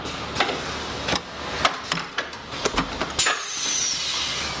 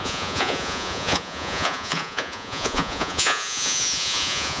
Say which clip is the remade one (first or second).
second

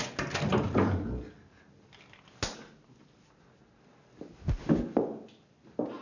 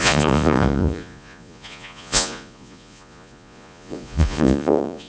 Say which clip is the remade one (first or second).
second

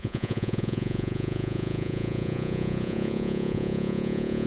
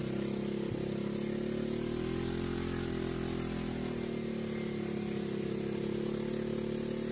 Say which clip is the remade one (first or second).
first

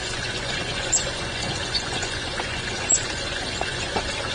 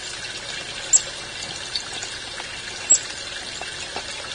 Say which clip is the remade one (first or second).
first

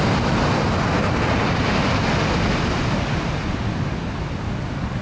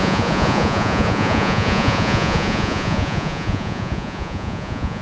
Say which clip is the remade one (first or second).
second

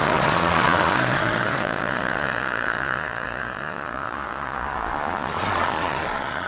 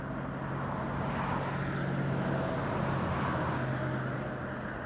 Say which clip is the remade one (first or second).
first